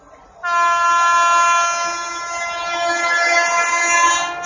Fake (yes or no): no